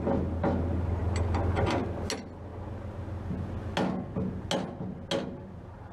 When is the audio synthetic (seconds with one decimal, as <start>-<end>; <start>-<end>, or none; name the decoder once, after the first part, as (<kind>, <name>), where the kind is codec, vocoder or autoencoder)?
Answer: none